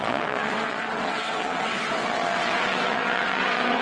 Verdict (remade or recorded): remade